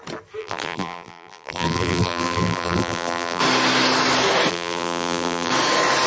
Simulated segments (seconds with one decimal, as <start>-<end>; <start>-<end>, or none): 0.4-3.4; 4.5-5.5